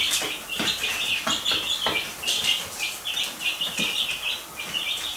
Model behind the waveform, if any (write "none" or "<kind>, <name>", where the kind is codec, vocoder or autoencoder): none